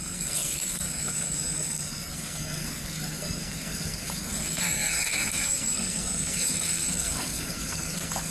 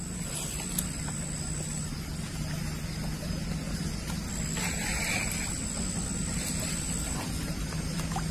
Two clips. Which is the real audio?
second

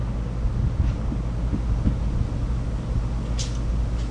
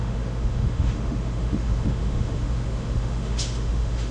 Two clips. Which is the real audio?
first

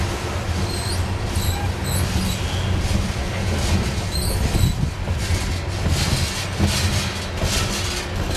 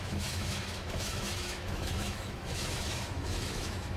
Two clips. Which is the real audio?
first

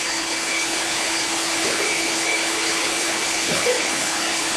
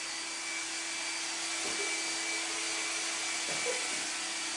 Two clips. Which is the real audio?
second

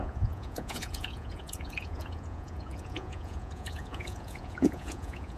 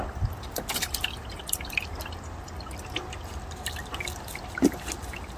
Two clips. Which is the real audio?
second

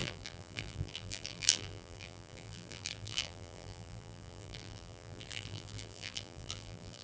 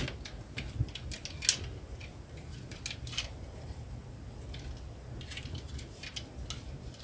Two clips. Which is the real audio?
second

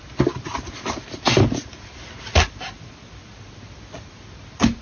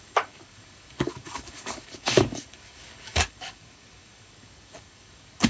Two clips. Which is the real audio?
first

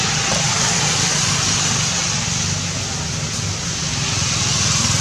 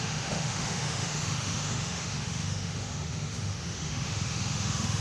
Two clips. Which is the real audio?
first